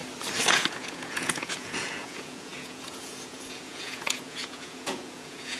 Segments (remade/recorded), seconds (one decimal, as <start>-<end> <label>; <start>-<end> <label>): 0.0-0.5 recorded; 0.5-5.6 remade